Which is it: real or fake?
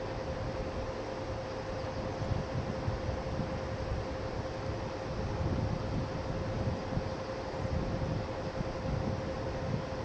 real